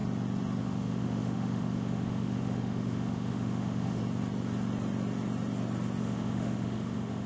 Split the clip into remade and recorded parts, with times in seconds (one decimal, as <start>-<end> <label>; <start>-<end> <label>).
0.0-0.6 recorded; 0.6-4.0 remade; 4.0-6.0 recorded; 6.0-7.3 remade